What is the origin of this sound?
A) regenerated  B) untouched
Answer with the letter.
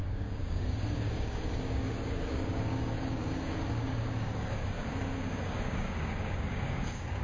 A